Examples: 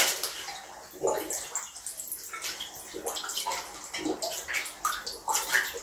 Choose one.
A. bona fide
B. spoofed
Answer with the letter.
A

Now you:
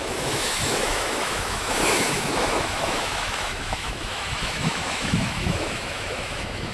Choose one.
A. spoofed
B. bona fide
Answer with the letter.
A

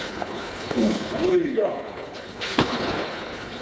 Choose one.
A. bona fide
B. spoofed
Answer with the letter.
B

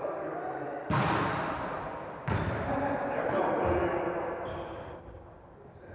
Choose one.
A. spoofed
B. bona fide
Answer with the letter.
B